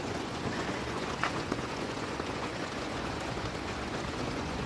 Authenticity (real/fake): fake